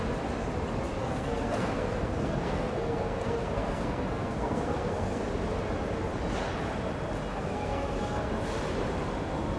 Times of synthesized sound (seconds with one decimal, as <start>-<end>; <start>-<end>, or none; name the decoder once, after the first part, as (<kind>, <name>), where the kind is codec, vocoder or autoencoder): 1.0-5.2 (codec, SNAC); 7.3-8.3